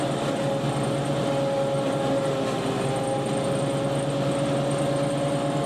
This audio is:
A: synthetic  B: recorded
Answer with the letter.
B